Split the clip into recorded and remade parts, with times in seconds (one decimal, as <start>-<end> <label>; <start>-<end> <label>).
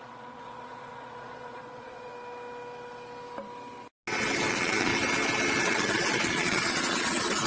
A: 0.0-2.1 remade; 2.1-4.5 recorded; 4.5-4.9 remade; 4.9-5.6 recorded; 5.6-7.5 remade